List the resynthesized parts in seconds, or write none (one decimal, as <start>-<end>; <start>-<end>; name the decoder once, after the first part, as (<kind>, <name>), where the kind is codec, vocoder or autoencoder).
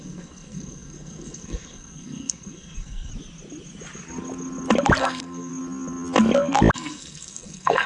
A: 0.0-3.1 (codec, SNAC); 5.0-5.5; 6.7-7.9